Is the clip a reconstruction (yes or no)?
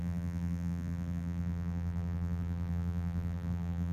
yes